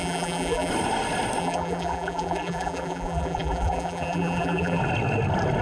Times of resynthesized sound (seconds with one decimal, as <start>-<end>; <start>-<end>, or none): 0.0-0.7; 1.4-4.8